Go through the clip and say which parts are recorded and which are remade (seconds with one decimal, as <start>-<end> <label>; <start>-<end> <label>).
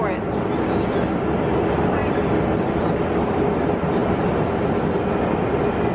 0.0-5.9 recorded